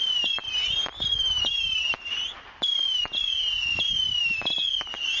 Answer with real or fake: real